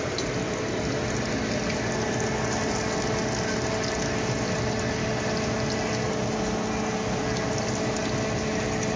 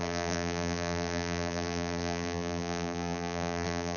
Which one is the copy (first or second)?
second